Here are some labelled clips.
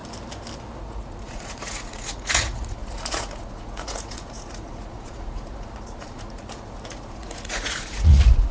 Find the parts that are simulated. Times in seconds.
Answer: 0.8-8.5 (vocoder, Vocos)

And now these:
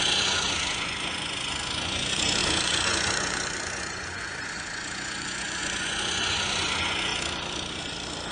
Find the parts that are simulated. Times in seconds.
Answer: 0.0-7.1 (vocoder, Vocos)

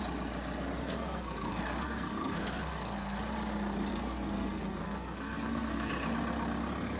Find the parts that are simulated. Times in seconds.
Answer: 0.8-3.2 (codec, SNAC); 3.9-5.9

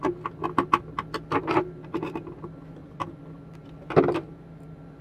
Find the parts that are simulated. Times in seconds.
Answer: none

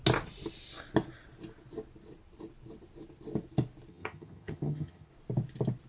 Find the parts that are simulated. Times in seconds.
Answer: 3.9-5.1 (vocoder, HiFi-GAN)

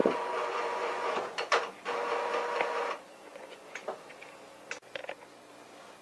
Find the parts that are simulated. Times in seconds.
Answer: 0.0-1.6 (vocoder, Vocos); 3.1-3.8